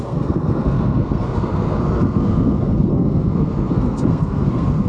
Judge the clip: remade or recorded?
remade